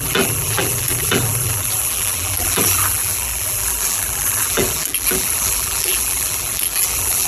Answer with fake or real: fake